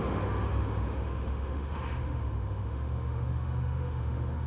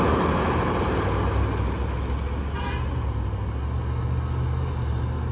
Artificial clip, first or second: first